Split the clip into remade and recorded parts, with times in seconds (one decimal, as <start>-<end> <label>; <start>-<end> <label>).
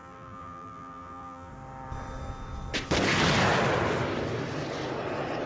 0.0-1.5 remade; 1.5-5.5 recorded